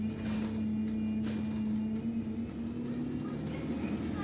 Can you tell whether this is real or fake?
real